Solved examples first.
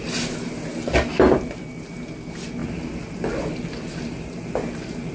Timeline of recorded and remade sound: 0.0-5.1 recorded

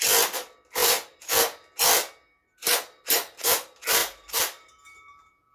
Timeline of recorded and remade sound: 0.0-4.0 recorded; 4.0-4.7 remade; 4.7-5.5 recorded

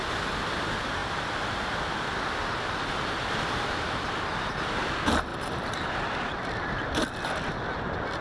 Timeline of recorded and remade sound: 0.0-5.3 recorded; 5.3-7.5 remade; 7.5-8.2 recorded

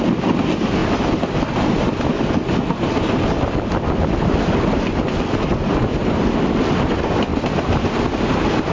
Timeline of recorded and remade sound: 0.0-0.8 recorded; 0.8-1.4 remade; 1.4-7.3 recorded; 7.3-8.0 remade; 8.0-8.7 recorded

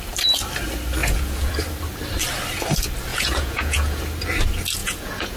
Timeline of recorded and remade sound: 0.0-1.0 recorded; 1.0-1.5 remade; 1.5-3.1 recorded; 3.1-4.0 remade; 4.0-4.8 recorded; 4.8-5.4 remade